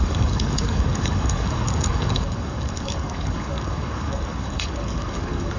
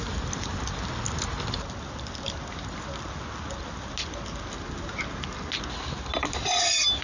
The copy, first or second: first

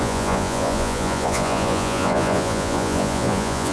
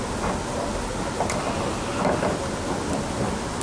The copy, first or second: first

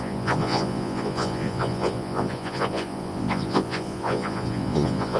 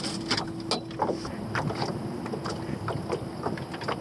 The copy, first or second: first